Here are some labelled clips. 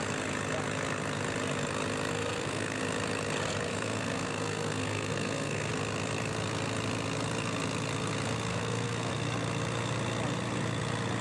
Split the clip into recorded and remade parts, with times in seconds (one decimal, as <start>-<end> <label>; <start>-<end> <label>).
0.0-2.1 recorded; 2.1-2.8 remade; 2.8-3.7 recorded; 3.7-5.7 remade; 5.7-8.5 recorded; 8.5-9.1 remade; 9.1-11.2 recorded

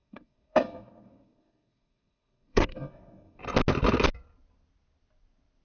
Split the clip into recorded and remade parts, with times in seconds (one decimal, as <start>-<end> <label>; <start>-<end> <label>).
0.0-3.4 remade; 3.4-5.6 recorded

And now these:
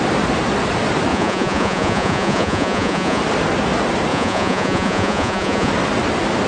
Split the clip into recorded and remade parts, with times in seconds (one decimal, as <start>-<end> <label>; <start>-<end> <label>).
0.0-1.1 recorded; 1.1-3.2 remade; 3.2-4.1 recorded; 4.1-5.7 remade; 5.7-6.5 recorded

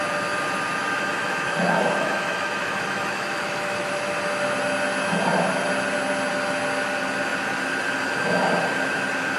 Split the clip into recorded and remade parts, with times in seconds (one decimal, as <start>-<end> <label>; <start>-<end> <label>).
0.0-1.2 recorded; 1.2-3.9 remade; 3.9-9.4 recorded